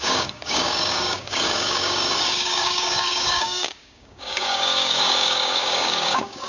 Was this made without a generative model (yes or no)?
no